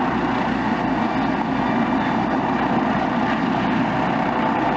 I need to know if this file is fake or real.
real